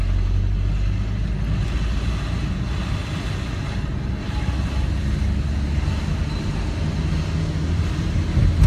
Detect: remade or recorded recorded